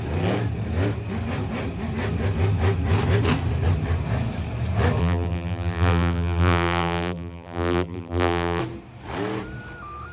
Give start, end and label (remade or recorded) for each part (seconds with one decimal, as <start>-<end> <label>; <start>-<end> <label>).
0.0-5.0 recorded; 5.0-8.6 remade; 8.6-10.1 recorded